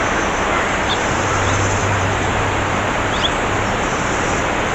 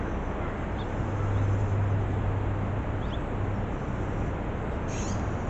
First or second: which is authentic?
second